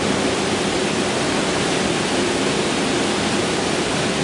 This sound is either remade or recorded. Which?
recorded